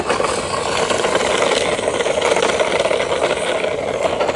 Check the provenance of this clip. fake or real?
real